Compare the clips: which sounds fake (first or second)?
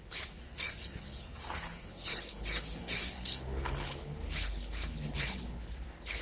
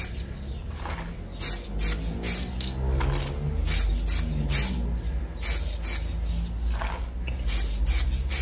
first